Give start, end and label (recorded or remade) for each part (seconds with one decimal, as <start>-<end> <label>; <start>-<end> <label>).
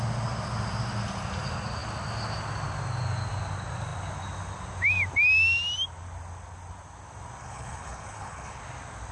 0.0-7.4 recorded; 7.4-8.6 remade; 8.6-9.1 recorded